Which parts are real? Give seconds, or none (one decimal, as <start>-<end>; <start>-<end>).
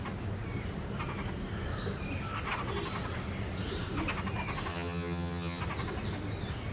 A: 0.0-4.7; 5.6-6.7